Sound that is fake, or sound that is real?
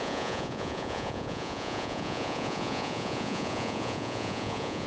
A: fake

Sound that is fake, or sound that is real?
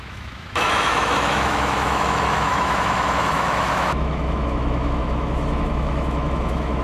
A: fake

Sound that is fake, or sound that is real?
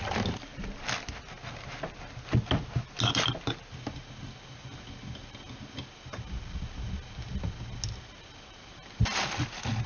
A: real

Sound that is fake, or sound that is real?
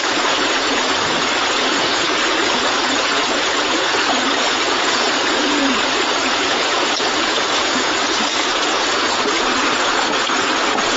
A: fake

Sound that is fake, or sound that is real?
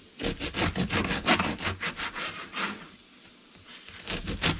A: real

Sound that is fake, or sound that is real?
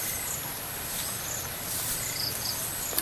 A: real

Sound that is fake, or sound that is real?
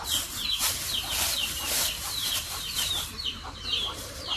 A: fake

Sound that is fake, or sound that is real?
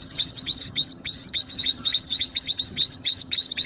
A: fake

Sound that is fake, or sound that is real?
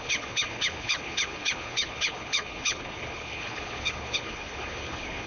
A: fake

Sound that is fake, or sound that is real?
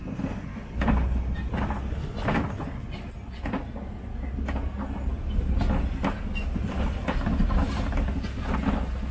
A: real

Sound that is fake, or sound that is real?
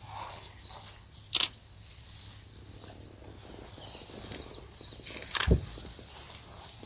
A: real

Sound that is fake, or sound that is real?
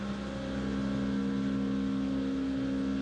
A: real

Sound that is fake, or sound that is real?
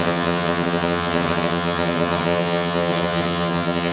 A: fake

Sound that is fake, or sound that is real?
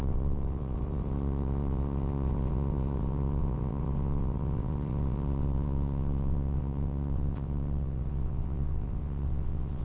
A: fake